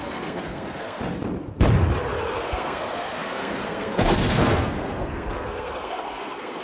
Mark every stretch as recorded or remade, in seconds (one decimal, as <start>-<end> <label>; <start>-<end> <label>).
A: 0.0-1.0 remade; 1.0-2.3 recorded; 2.3-6.6 remade